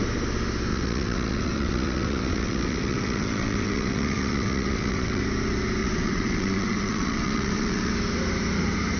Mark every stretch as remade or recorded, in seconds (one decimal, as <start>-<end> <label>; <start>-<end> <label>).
0.0-0.7 recorded; 0.7-5.2 remade; 5.2-5.8 recorded; 5.8-7.9 remade; 7.9-9.0 recorded